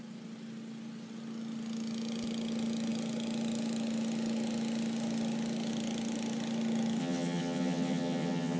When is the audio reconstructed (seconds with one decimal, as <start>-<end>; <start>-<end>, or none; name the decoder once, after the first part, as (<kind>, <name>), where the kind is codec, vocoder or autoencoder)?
7.0-8.6 (vocoder, HiFi-GAN)